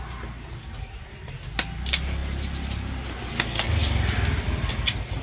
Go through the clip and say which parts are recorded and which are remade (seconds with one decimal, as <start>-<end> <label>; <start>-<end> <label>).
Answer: 0.0-5.2 recorded